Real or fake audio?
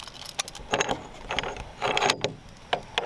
real